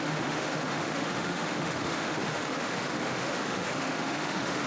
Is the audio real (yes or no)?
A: no